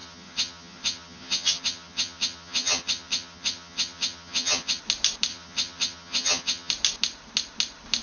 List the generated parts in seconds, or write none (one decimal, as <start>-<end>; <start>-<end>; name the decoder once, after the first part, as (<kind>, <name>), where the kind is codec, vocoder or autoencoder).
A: 0.0-4.8 (vocoder, HiFi-GAN); 5.3-6.7